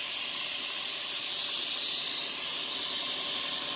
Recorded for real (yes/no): yes